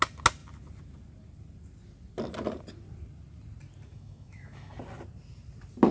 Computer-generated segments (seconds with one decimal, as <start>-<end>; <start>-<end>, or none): 3.9-4.7